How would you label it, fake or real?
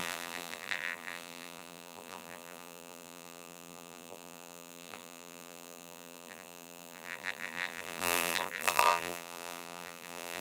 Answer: fake